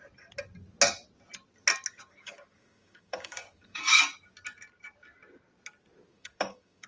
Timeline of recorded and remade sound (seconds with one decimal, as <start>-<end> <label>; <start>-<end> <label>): 0.0-1.9 recorded; 1.9-3.9 remade; 3.9-6.1 recorded; 6.1-6.9 remade